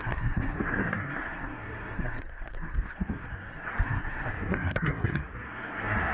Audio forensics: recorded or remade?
remade